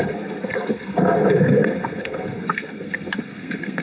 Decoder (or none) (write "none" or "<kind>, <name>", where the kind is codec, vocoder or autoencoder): codec, SNAC